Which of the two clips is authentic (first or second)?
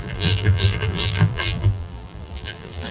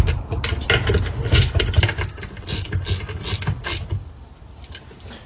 second